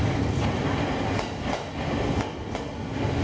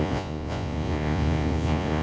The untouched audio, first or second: first